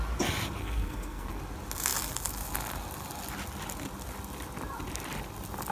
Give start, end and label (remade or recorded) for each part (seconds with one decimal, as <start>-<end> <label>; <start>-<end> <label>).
0.0-0.6 recorded; 0.6-1.4 remade; 1.4-5.7 recorded